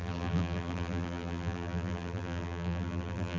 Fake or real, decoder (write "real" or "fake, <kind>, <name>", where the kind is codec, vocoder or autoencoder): fake, vocoder, BigVGAN v2